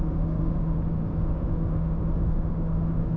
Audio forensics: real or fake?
fake